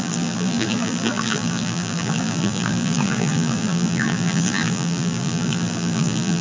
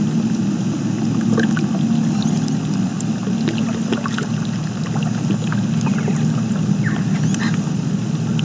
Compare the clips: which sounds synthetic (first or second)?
first